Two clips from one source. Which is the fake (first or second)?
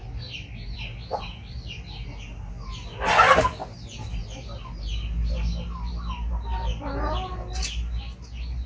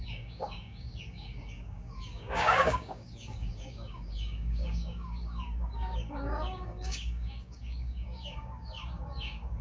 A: second